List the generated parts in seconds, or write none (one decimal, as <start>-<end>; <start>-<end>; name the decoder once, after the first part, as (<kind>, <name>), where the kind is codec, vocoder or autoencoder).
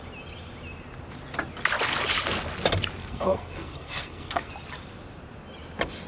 3.0-4.5 (codec, SNAC)